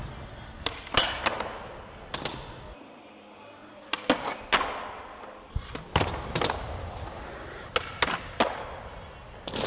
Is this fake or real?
real